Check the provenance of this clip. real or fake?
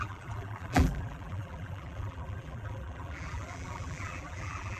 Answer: fake